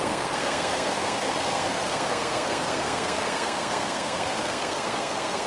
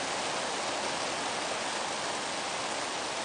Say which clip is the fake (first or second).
first